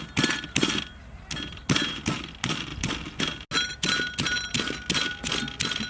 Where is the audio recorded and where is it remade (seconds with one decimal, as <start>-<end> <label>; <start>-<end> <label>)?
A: 0.0-5.9 recorded

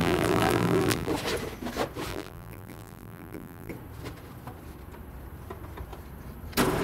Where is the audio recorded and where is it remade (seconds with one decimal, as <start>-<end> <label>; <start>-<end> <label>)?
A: 0.0-1.1 remade; 1.1-2.1 recorded; 2.1-3.7 remade; 3.7-6.8 recorded

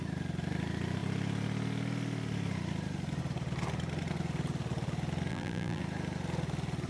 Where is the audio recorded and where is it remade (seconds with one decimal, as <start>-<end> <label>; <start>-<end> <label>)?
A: 0.0-5.3 recorded; 5.3-5.8 remade; 5.8-6.9 recorded

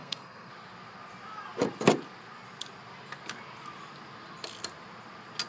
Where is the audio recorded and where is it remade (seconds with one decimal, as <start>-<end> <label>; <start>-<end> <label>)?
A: 0.0-0.5 remade; 0.5-5.5 recorded

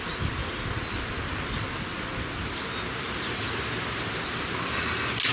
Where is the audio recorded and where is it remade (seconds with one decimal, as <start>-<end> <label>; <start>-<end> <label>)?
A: 0.0-5.3 recorded

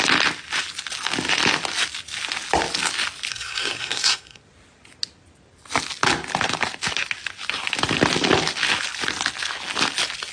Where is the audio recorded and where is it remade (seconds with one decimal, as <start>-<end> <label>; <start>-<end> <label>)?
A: 0.0-3.3 recorded; 3.3-4.4 remade; 4.4-10.3 recorded

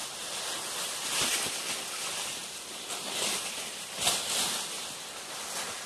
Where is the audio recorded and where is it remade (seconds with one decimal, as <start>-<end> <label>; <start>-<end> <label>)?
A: 0.0-5.9 recorded

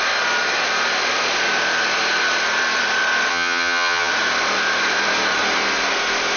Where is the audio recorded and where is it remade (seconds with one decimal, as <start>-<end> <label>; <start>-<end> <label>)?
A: 0.0-3.3 recorded; 3.3-4.1 remade; 4.1-6.4 recorded